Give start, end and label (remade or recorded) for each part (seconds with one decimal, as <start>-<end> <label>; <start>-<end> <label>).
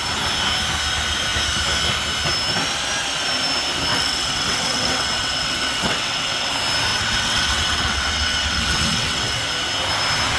0.0-3.9 recorded; 3.9-6.5 remade; 6.5-6.9 recorded; 6.9-9.4 remade; 9.4-10.4 recorded